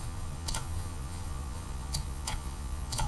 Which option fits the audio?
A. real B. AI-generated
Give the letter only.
B